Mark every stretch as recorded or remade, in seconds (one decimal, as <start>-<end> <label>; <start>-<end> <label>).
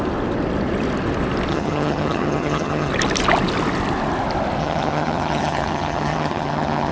0.0-1.5 recorded; 1.5-2.9 remade; 2.9-4.6 recorded; 4.6-6.9 remade